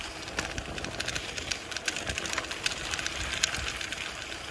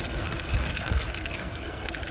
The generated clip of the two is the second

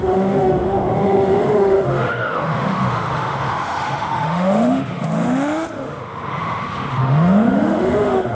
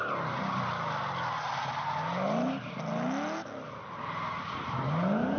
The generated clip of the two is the first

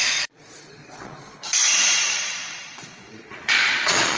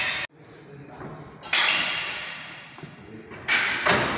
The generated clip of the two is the first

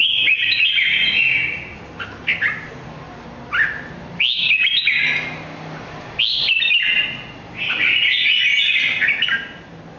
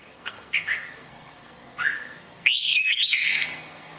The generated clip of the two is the second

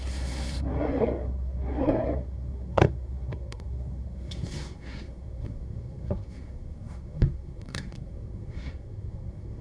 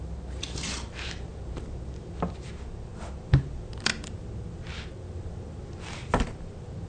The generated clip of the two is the first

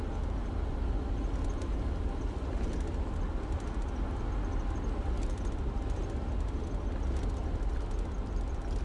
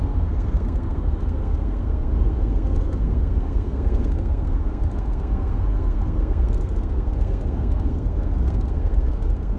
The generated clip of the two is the second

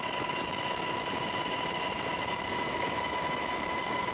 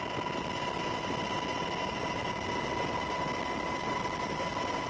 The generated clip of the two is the first